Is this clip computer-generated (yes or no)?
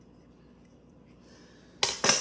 no